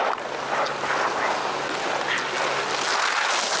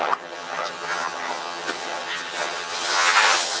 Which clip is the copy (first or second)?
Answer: second